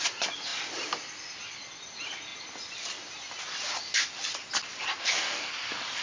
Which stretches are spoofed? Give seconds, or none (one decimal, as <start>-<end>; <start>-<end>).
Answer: 5.0-5.5